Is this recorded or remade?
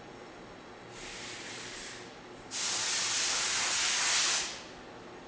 recorded